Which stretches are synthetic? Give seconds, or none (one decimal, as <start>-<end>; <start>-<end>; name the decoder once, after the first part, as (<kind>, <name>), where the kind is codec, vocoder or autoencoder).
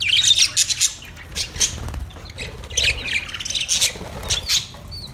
none